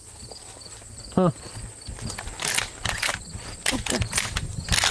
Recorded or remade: recorded